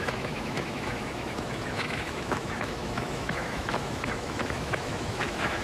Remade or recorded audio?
remade